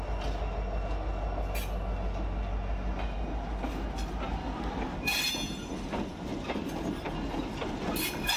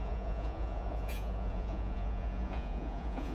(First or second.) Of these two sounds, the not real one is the second